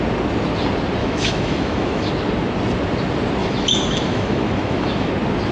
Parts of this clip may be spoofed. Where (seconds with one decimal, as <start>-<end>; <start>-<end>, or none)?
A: 1.0-2.1; 3.4-5.1